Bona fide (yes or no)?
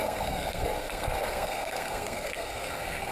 no